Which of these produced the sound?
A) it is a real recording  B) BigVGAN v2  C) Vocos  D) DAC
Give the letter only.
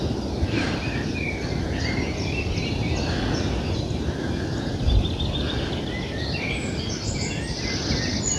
A